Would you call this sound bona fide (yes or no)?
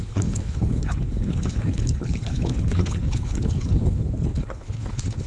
no